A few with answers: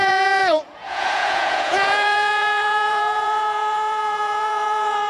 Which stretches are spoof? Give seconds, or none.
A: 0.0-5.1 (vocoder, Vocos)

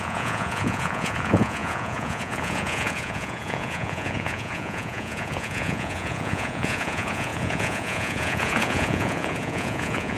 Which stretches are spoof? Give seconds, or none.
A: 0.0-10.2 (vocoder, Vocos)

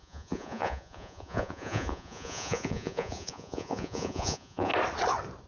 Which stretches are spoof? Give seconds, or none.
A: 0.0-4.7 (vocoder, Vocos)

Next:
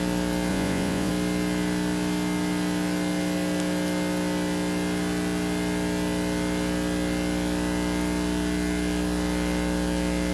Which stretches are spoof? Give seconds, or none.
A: 0.5-1.1 (vocoder, Vocos)